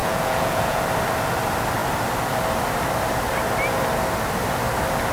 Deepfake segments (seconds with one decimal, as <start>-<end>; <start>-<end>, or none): 0.0-0.8